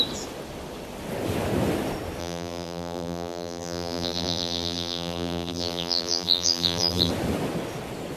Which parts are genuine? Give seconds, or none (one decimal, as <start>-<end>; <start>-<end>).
0.0-2.2; 7.1-8.2